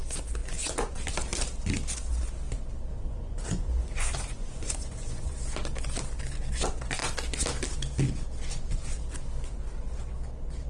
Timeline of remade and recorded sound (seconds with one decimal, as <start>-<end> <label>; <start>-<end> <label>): 0.0-0.4 recorded; 0.4-0.9 remade; 0.9-2.9 recorded; 2.9-5.3 remade; 5.3-10.7 recorded